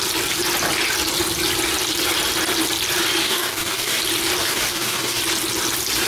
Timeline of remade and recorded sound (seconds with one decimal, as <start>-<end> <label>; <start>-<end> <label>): 0.0-3.2 recorded; 3.2-4.0 remade; 4.0-4.4 recorded; 4.4-5.2 remade; 5.2-6.1 recorded